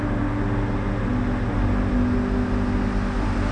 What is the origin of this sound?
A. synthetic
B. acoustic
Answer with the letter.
B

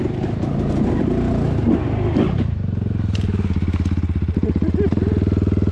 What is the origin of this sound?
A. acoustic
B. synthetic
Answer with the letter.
A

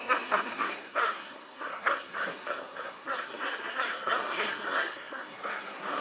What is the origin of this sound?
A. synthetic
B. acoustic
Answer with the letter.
A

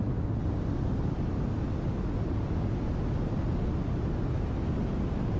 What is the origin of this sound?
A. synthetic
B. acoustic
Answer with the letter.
B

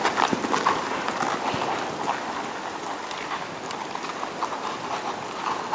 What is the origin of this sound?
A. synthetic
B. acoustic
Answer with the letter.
B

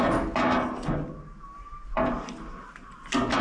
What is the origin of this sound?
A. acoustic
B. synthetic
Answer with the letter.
A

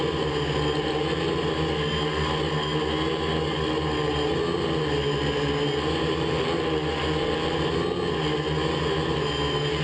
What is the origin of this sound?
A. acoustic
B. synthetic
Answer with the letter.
A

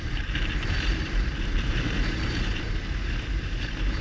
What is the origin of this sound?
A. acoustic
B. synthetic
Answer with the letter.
B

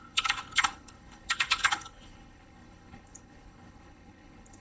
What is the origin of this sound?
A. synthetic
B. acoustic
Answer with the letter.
A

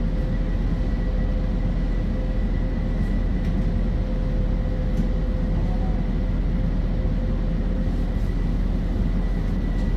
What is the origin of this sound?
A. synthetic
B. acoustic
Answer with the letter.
B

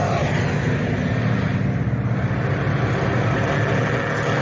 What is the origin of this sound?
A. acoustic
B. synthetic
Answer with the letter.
A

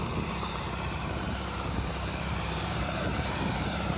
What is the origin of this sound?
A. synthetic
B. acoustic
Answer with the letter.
A